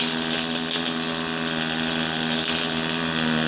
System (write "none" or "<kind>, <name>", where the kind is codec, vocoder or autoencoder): none